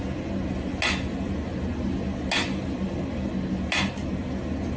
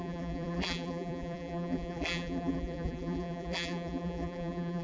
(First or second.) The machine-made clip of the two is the second